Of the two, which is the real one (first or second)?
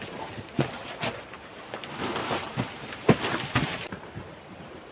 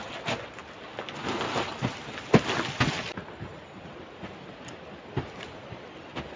second